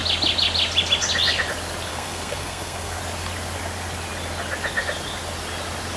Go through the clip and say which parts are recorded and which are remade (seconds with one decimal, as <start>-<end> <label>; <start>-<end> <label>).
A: 0.0-1.9 recorded; 1.9-3.0 remade; 3.0-6.0 recorded